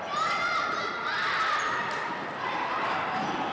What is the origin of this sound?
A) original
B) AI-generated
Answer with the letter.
A